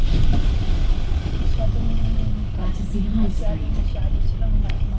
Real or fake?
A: real